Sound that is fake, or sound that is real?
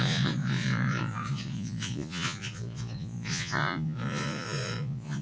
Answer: fake